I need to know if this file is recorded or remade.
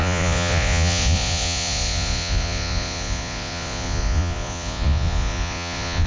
remade